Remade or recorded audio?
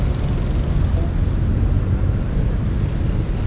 recorded